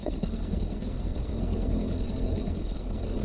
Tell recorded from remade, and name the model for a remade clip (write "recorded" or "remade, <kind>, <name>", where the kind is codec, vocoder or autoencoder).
remade, codec, SNAC